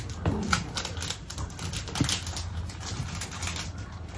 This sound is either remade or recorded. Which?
recorded